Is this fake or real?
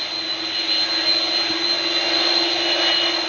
real